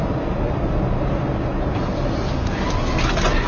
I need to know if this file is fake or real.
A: real